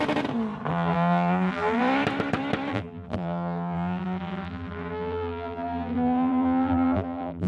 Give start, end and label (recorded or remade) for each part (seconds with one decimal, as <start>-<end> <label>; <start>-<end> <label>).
0.0-0.7 recorded; 0.7-1.8 remade; 1.8-2.7 recorded; 2.7-7.5 remade